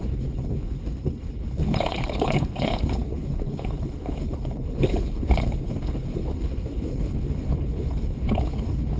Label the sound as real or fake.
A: fake